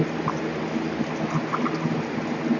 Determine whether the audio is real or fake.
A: real